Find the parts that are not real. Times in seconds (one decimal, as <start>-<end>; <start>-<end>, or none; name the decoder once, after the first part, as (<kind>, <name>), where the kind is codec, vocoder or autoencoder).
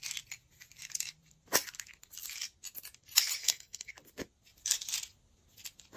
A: 3.4-3.9 (codec, SNAC)